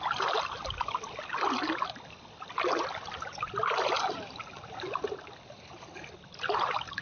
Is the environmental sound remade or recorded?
recorded